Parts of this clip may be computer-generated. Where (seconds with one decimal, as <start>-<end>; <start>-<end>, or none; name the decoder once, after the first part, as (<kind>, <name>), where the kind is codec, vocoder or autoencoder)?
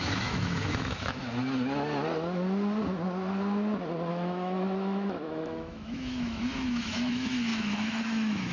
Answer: 0.0-1.2 (autoencoder, DAC-VAE); 4.1-8.5